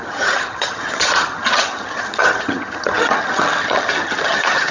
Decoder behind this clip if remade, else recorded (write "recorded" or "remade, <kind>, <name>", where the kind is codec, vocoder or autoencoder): remade, vocoder, HiFi-GAN